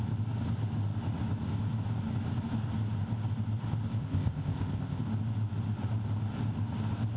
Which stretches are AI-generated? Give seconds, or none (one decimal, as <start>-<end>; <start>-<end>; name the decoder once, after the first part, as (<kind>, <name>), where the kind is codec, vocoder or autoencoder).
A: 4.0-5.0 (codec, ZipCodec)

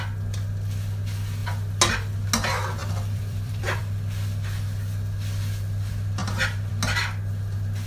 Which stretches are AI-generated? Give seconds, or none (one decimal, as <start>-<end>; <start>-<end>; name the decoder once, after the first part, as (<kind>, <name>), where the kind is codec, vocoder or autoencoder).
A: 2.8-3.8 (vocoder, BigVGAN v2); 6.2-6.7

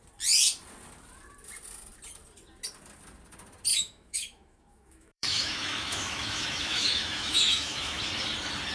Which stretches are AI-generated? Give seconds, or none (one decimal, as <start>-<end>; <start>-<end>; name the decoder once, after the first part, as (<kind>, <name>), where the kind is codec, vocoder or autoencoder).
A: 3.7-8.0 (autoencoder, DAC-VAE)

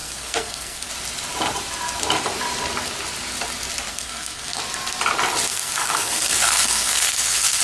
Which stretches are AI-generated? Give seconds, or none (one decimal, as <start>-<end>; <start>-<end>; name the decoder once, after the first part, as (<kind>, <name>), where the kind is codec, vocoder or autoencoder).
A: 0.0-0.9 (codec, SNAC); 3.9-4.6; 5.5-7.6

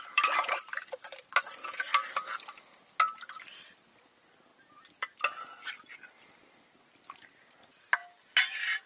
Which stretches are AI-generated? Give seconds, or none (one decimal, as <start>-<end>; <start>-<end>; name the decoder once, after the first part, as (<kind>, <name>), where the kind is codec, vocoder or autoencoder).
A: none